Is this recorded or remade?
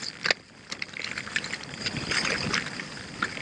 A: recorded